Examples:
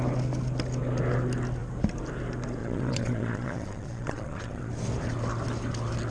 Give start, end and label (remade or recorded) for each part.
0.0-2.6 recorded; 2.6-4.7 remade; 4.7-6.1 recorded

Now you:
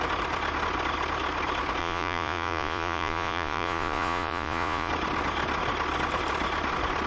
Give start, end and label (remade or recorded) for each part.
0.0-1.8 recorded; 1.8-4.9 remade; 4.9-7.1 recorded

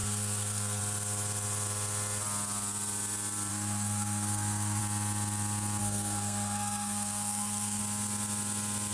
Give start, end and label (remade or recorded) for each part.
0.0-0.8 remade; 0.8-3.5 recorded; 3.5-4.8 remade; 4.8-5.8 recorded; 5.8-7.8 remade; 7.8-8.9 recorded